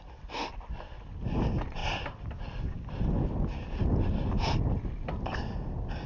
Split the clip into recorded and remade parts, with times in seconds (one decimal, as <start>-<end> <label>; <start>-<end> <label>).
0.0-6.1 recorded